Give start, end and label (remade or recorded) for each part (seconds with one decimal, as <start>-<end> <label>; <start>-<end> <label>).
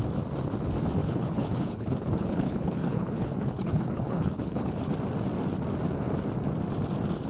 0.0-1.0 recorded; 1.0-4.9 remade; 4.9-7.3 recorded